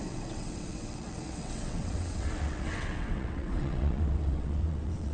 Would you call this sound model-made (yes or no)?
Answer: yes